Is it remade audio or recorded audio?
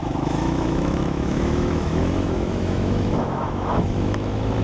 remade